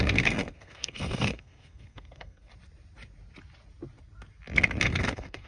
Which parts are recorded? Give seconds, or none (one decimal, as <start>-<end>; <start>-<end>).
2.5-4.8